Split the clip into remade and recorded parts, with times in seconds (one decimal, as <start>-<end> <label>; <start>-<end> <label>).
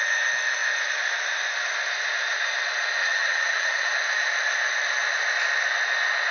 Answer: 0.0-3.0 recorded; 3.0-3.9 remade; 3.9-6.3 recorded